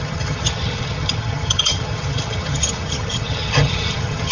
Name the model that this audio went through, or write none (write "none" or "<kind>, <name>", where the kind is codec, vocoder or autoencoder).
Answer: vocoder, HiFi-GAN